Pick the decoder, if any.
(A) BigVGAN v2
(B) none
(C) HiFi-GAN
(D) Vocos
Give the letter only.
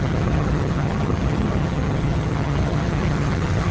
C